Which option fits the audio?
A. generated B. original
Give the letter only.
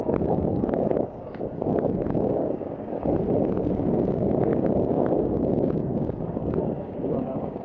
A